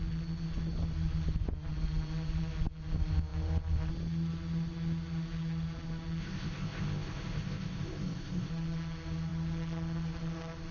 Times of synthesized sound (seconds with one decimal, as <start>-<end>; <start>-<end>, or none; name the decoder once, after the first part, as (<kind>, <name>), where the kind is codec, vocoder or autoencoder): 6.2-8.5 (codec, ZipCodec)